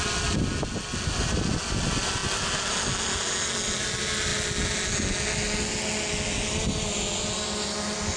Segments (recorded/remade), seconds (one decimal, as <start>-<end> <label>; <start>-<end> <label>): 0.0-8.2 recorded